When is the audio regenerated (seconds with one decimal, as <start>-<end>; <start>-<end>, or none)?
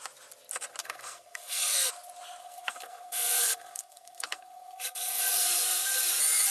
0.8-1.9; 2.4-6.1